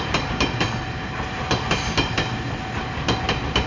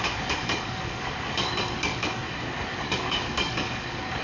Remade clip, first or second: second